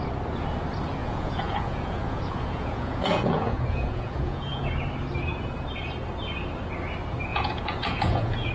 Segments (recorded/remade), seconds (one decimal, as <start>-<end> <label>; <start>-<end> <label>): 0.0-1.0 recorded; 1.0-4.7 remade; 4.7-7.3 recorded; 7.3-8.5 remade